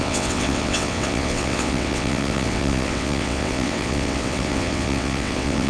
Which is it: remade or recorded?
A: remade